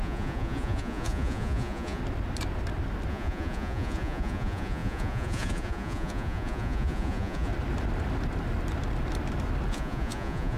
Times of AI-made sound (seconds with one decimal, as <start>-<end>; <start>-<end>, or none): 0.0-2.0; 3.1-7.5; 9.7-10.6